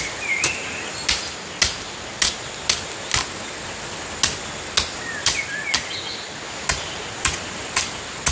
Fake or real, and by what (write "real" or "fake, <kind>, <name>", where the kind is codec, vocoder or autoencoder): real